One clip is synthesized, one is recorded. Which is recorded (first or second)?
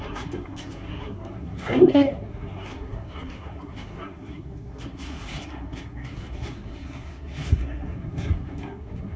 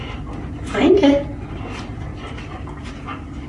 second